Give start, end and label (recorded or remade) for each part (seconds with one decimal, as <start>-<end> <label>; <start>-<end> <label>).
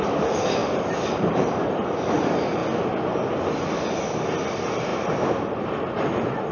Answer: 0.0-2.6 remade; 2.6-4.5 recorded; 4.5-6.5 remade